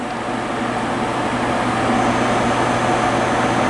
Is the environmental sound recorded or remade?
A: recorded